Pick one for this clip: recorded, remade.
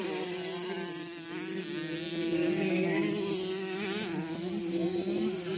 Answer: recorded